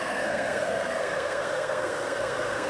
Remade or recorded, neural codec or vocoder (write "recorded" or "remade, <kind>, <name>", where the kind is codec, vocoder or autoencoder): remade, codec, SNAC